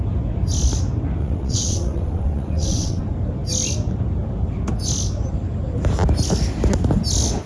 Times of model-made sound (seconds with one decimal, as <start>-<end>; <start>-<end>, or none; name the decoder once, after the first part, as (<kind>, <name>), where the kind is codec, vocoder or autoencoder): 1.2-3.0 (vocoder, WaveNeXt)